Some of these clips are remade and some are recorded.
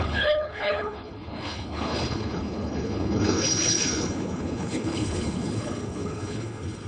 remade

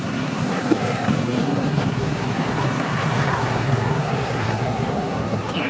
remade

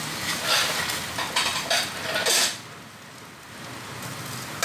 recorded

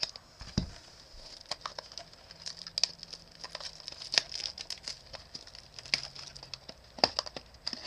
recorded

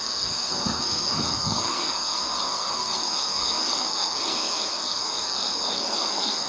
remade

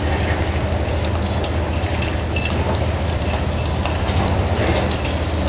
recorded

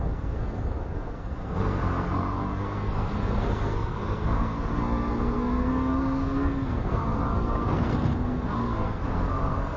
remade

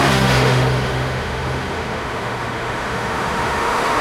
remade